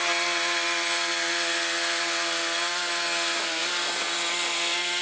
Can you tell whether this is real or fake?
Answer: real